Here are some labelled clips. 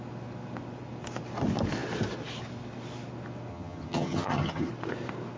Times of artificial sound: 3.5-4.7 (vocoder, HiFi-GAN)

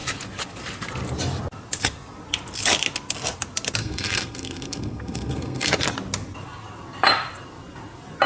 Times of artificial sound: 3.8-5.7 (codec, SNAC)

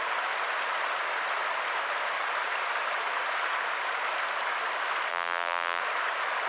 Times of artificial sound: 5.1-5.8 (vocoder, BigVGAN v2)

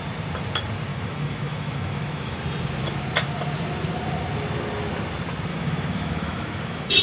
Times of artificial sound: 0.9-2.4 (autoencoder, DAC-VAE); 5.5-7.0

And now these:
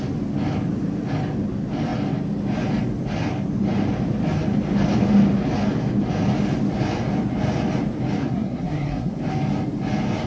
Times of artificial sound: 8.2-9.1 (codec, SNAC)

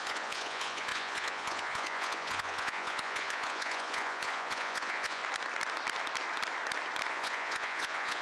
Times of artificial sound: 0.0-5.2 (vocoder, Vocos); 7.1-8.2

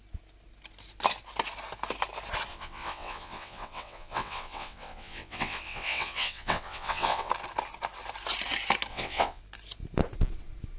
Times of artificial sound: 2.5-7.3 (vocoder, WaveNeXt); 8.9-9.4